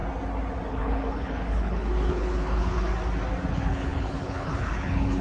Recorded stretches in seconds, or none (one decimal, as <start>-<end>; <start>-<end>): 0.0-0.7; 2.9-3.5